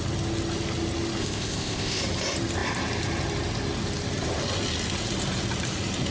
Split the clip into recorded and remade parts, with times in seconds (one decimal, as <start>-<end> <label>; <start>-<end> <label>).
0.0-1.2 recorded; 1.2-2.0 remade; 2.0-6.1 recorded